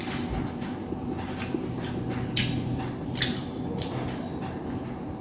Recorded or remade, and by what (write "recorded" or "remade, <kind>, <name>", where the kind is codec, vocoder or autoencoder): recorded